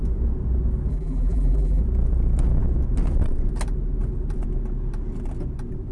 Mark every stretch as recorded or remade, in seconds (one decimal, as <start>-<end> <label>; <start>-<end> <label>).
0.0-0.9 recorded; 0.9-1.8 remade; 1.8-5.9 recorded